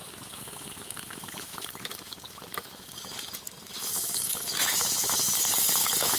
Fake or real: fake